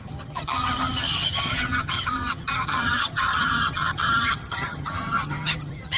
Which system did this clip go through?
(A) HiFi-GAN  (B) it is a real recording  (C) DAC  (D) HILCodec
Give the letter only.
A